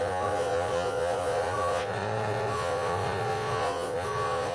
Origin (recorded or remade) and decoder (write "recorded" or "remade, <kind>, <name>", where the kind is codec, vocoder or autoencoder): remade, vocoder, Vocos